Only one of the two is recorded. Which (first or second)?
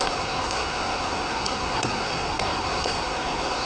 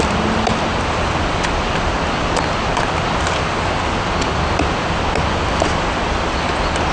second